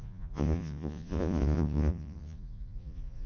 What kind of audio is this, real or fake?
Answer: fake